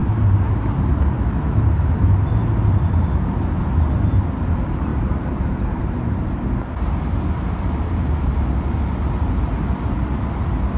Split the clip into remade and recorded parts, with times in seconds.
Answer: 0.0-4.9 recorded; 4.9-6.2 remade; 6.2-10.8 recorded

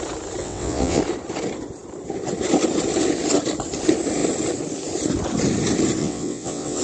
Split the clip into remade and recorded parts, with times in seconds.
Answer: 0.0-0.4 recorded; 0.4-1.0 remade; 1.0-6.0 recorded; 6.0-6.8 remade

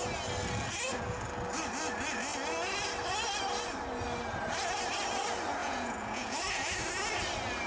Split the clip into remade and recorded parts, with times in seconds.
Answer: 0.0-5.6 recorded; 5.6-6.7 remade; 6.7-7.7 recorded

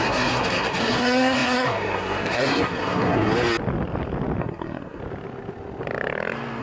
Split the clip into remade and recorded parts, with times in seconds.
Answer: 0.0-3.3 remade; 3.3-4.4 recorded; 4.4-5.0 remade; 5.0-6.6 recorded

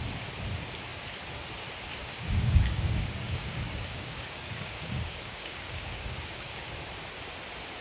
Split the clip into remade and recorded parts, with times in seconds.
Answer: 0.0-2.0 recorded; 2.0-6.7 remade; 6.7-7.8 recorded

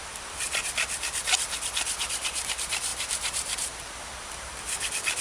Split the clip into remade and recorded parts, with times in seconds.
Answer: 0.0-0.6 remade; 0.6-2.0 recorded; 2.0-5.2 remade

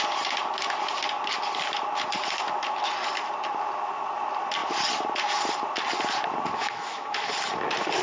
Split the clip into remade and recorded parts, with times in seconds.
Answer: 0.0-6.6 recorded; 6.6-7.3 remade; 7.3-8.0 recorded